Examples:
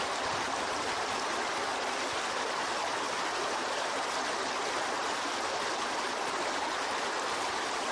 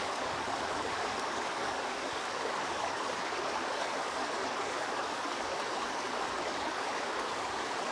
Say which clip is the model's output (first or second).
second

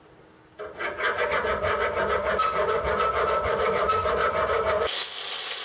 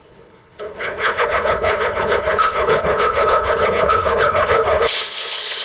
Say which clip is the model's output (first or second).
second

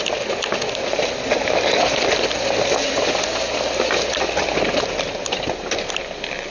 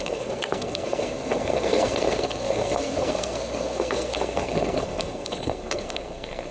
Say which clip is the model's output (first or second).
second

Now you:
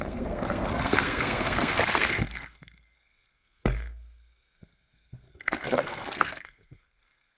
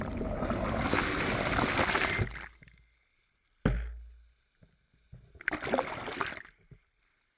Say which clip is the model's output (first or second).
first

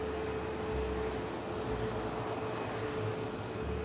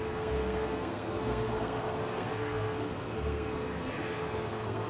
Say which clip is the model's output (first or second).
second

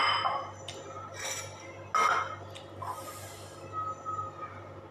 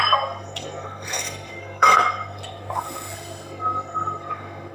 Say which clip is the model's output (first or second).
second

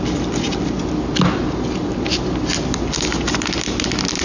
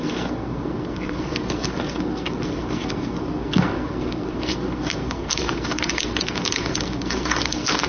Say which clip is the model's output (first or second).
second